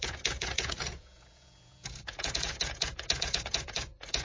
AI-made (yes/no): yes